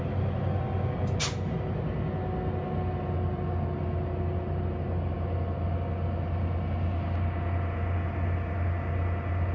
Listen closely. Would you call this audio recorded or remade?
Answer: recorded